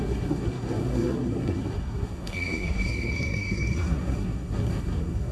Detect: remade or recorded remade